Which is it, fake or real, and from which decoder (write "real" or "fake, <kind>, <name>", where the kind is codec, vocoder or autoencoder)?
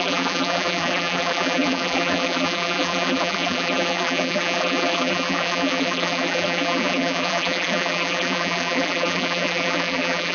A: fake, vocoder, BigVGAN v2